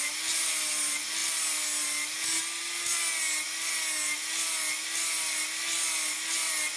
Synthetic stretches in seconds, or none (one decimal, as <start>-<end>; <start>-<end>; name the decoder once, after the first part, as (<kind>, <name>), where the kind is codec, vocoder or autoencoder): none